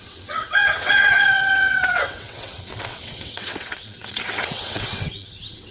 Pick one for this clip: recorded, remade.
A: remade